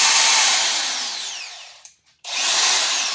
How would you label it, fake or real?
fake